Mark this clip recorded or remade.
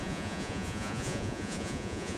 remade